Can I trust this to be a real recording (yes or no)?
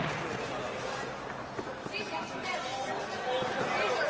yes